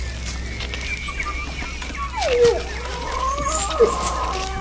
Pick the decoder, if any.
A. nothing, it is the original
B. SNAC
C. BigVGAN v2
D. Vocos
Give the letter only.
A